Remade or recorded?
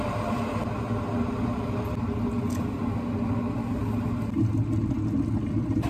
recorded